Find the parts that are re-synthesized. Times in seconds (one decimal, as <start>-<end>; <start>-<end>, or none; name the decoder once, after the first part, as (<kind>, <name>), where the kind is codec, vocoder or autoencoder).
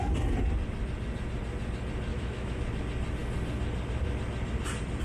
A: 2.1-2.6 (autoencoder, DAC-VAE)